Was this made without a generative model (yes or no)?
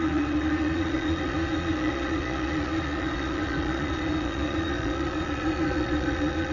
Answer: no